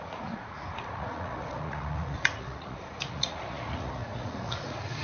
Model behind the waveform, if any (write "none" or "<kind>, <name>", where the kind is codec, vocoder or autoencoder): vocoder, Vocos